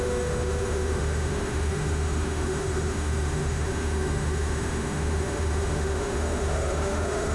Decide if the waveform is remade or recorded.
remade